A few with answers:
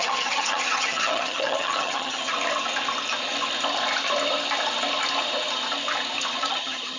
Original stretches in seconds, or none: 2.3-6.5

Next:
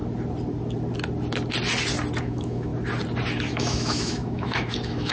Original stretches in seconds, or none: 0.0-2.2; 2.7-3.5

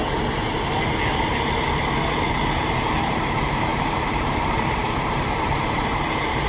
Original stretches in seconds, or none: 0.0-2.3

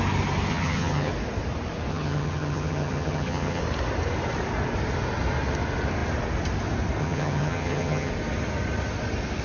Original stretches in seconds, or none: 0.0-0.5; 1.1-1.9; 3.6-7.0; 8.1-9.4

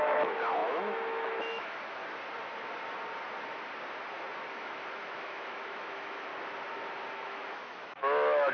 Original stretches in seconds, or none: 2.0-4.5; 6.3-7.1

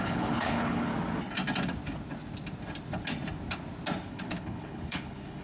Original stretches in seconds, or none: 0.9-4.1